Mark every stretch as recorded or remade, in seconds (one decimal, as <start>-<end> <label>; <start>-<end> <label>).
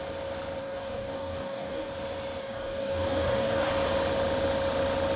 0.0-0.6 recorded; 0.6-1.9 remade; 1.9-2.4 recorded; 2.4-3.7 remade; 3.7-5.2 recorded